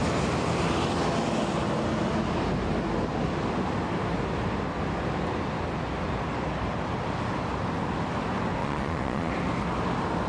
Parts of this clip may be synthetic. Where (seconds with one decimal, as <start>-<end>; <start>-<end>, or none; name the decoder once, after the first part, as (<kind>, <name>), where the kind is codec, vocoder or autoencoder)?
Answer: 8.6-9.3 (vocoder, Vocos)